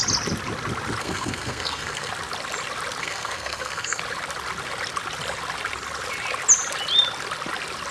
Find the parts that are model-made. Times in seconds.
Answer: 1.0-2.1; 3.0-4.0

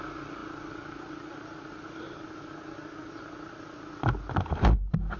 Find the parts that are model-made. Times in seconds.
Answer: none